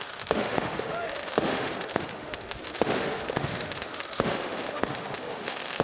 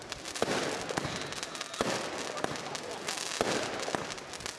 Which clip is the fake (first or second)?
first